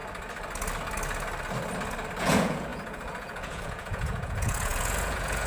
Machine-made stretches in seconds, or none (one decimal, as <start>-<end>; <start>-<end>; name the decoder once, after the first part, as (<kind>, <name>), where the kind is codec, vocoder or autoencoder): 2.2-5.5 (vocoder, Vocos)